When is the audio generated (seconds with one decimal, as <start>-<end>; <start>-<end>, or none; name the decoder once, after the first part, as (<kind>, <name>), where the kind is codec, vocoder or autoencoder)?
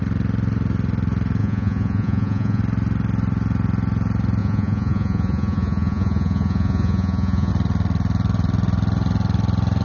1.4-2.6 (vocoder, Vocos); 4.4-7.5